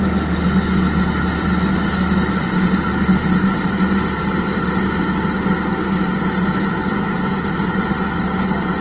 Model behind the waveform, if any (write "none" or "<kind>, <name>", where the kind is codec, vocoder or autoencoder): none